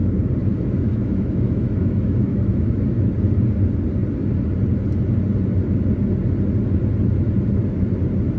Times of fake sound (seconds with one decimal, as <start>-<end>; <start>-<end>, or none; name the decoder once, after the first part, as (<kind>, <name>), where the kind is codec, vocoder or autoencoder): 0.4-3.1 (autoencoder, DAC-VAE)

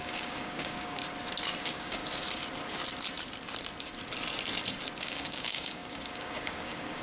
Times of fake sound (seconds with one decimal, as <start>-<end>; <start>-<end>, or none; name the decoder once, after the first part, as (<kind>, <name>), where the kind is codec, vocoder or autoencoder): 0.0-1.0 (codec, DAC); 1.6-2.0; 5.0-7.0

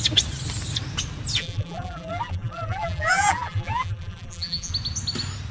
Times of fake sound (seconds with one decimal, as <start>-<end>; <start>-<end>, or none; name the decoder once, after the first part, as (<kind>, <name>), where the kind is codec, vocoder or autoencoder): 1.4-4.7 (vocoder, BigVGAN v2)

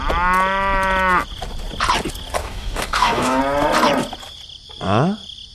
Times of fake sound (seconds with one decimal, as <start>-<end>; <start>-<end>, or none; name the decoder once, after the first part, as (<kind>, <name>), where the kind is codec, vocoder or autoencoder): 2.4-3.4 (codec, DAC)